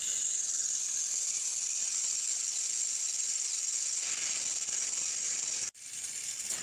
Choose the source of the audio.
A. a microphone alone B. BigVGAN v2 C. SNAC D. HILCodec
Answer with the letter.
A